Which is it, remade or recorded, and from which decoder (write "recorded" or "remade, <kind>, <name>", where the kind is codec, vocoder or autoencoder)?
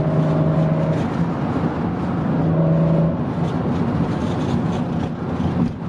recorded